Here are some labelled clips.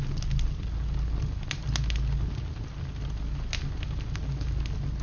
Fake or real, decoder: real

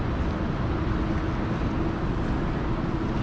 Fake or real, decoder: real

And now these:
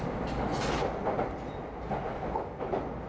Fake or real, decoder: real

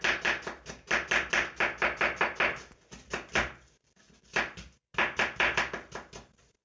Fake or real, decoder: real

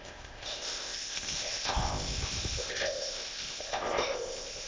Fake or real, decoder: fake, codec, ZipCodec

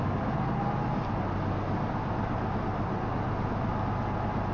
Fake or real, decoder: real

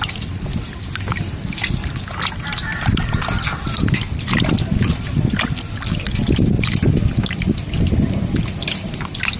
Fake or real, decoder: real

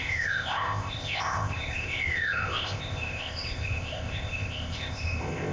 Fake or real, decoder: fake, codec, ZipCodec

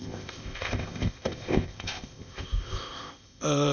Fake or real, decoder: fake, codec, ZipCodec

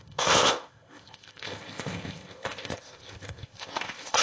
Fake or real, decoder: fake, codec, ZipCodec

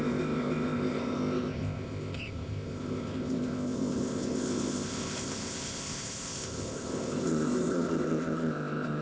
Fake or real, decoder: fake, codec, ZipCodec